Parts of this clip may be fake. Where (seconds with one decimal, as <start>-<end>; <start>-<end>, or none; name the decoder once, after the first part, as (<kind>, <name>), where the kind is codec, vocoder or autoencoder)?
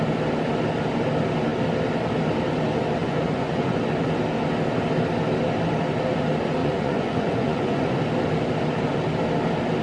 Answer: 3.0-3.8 (vocoder, Vocos); 6.6-8.0